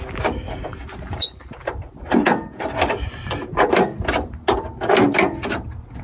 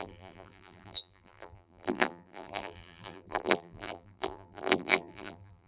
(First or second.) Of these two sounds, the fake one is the second